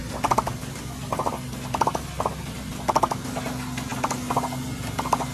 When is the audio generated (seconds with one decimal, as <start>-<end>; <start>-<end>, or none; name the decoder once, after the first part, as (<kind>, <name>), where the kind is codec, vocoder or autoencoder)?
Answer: none